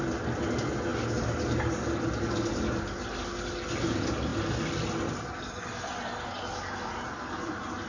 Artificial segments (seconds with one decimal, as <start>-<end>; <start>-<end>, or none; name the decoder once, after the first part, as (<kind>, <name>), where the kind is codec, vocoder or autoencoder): none